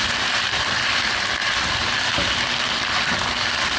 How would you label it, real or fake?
fake